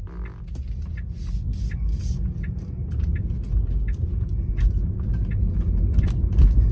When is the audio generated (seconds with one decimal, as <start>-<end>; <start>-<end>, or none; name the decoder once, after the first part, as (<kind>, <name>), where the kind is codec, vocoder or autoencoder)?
none